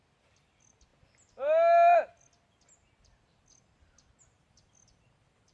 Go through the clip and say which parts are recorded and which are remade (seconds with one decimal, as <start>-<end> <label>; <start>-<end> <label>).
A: 0.0-5.5 recorded